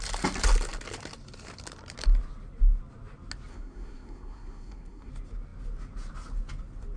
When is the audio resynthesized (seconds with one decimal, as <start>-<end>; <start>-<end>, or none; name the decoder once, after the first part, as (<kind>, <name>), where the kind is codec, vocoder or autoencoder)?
3.5-5.1 (codec, SNAC)